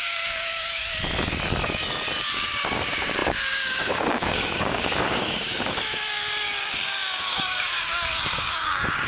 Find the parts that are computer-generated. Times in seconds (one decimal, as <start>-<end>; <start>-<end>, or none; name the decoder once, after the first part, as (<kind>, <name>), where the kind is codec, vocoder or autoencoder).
0.0-0.8 (codec, DAC); 2.2-9.1